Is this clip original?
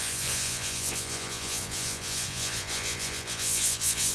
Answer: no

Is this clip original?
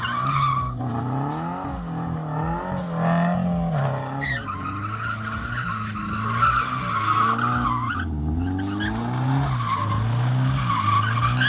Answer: yes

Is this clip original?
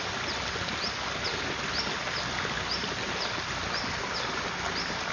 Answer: yes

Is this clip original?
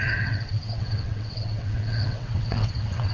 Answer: no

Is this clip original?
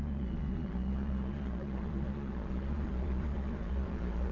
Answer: no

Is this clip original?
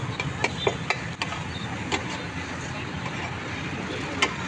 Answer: yes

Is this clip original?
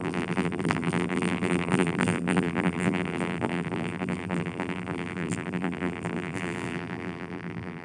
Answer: no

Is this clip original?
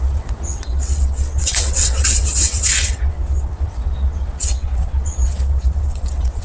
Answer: no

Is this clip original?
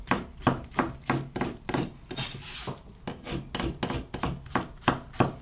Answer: yes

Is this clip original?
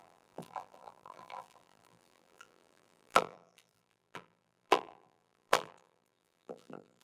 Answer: no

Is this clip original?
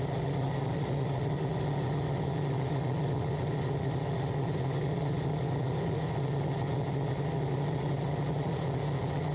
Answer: yes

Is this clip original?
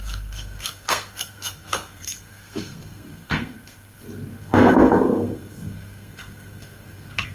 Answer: no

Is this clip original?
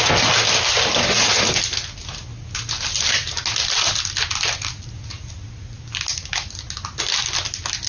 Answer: yes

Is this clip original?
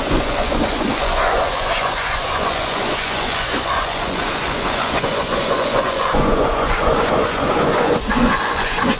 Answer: no